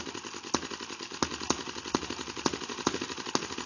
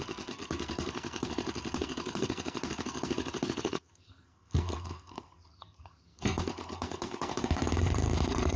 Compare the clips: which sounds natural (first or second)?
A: first